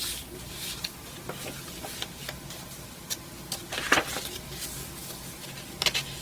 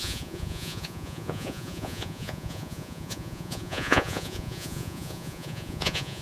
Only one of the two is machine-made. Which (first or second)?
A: second